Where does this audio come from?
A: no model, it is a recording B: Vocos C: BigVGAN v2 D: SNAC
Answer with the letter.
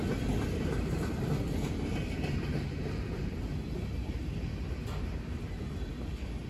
A